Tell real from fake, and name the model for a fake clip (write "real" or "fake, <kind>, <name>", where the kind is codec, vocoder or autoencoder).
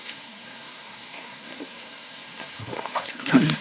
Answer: fake, codec, SNAC